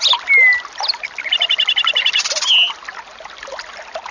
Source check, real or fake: real